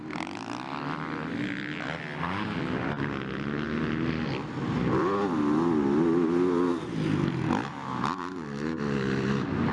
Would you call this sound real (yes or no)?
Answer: yes